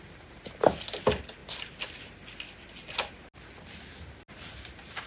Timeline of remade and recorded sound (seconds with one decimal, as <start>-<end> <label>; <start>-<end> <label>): 0.0-5.1 recorded